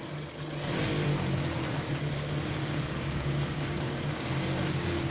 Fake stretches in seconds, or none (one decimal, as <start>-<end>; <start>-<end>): 2.6-5.1

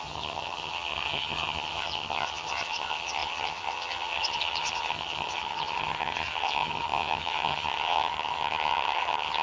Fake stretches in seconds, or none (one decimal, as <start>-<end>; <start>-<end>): 0.0-9.4